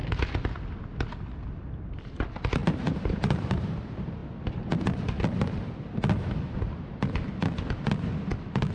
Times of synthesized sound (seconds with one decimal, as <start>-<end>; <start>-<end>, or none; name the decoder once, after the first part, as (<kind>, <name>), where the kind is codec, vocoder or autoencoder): 2.6-3.8 (vocoder, BigVGAN v2)